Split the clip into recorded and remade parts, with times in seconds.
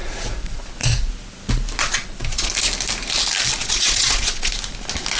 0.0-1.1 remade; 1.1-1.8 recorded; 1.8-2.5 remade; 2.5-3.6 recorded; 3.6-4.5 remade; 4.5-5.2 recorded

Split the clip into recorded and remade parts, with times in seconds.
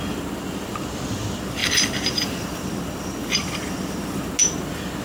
0.0-1.6 recorded; 1.6-4.3 remade; 4.3-5.0 recorded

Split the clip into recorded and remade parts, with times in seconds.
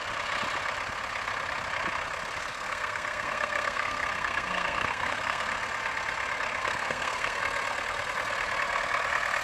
0.0-2.5 recorded; 2.5-5.4 remade; 5.4-6.6 recorded; 6.6-7.4 remade; 7.4-9.4 recorded